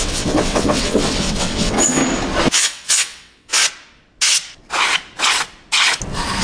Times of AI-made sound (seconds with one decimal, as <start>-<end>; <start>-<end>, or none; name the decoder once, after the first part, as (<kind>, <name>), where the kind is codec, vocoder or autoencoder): 0.0-2.0 (vocoder, WaveNeXt); 2.5-3.6